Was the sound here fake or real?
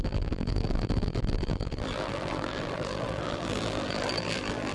fake